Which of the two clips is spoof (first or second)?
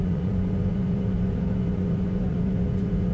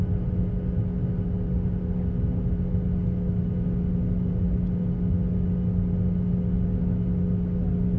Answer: first